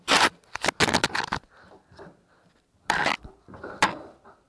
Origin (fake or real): real